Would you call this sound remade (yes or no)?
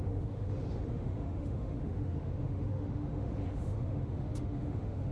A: yes